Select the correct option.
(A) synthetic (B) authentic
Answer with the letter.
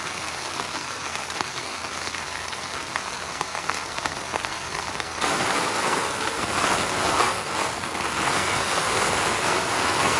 A